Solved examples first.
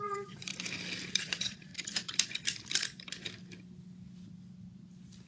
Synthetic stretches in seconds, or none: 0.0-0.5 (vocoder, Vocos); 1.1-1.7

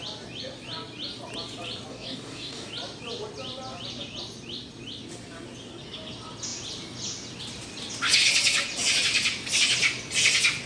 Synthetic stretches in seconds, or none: 1.9-2.7 (codec, DAC)

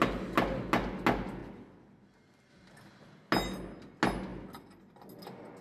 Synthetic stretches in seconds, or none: none